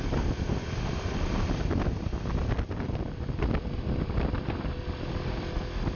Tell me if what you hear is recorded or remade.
remade